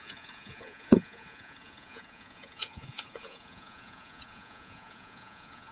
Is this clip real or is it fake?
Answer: fake